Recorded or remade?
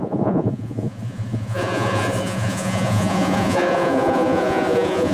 remade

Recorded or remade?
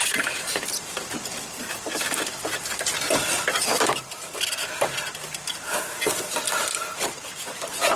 recorded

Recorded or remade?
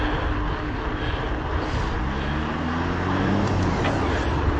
recorded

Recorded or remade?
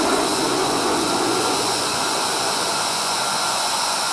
remade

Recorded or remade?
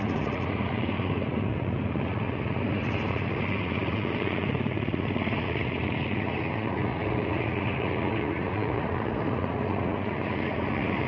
remade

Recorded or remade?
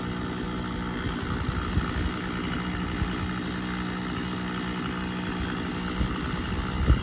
recorded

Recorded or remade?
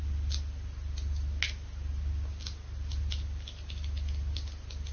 recorded